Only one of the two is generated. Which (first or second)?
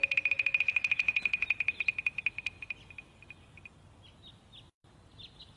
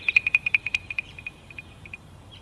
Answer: second